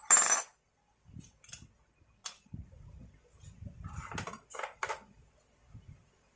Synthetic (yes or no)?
no